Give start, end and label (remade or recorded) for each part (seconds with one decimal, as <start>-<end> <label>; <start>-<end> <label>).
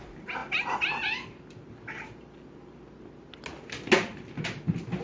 0.0-5.0 recorded